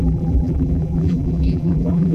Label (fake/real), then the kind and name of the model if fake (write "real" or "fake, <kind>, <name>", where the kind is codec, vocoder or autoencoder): fake, vocoder, BigVGAN v2